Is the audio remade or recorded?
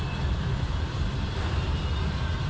recorded